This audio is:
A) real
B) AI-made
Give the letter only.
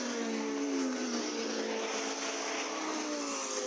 A